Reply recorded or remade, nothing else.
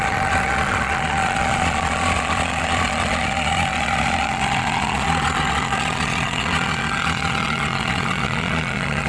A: remade